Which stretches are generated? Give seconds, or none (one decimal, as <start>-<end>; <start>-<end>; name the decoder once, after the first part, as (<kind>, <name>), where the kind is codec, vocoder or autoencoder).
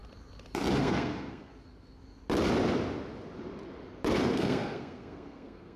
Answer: 0.8-1.5 (codec, SNAC); 4.3-5.8